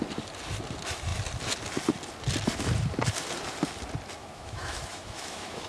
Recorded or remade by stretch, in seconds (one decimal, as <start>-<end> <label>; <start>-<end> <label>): 0.0-4.2 recorded; 4.2-5.7 remade